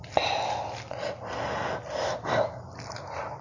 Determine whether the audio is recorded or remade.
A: recorded